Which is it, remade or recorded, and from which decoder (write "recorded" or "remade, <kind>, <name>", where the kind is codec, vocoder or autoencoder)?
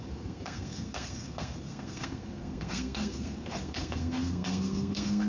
remade, codec, SNAC